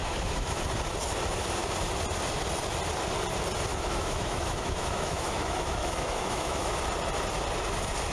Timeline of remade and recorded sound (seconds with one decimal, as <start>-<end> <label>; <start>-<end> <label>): 0.0-0.6 remade; 0.6-3.7 recorded; 3.7-6.8 remade; 6.8-8.1 recorded